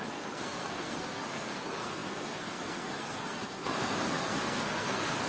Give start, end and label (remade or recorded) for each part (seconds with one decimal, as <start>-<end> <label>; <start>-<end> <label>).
0.0-5.3 remade